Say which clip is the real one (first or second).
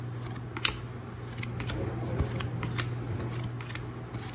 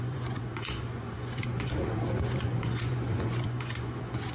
first